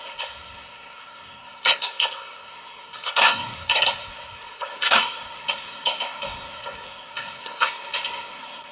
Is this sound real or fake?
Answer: fake